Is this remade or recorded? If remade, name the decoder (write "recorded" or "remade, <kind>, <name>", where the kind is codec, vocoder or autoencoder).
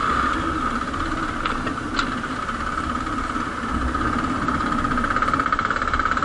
recorded